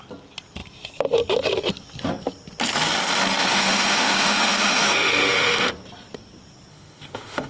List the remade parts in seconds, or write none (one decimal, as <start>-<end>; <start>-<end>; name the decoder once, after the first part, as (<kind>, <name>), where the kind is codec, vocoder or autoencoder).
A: 3.4-5.7 (autoencoder, DAC-VAE); 6.7-7.5